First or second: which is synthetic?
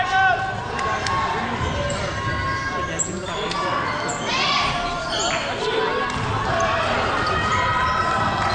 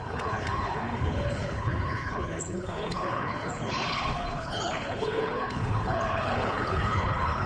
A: second